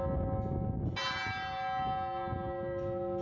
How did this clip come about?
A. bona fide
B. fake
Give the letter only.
A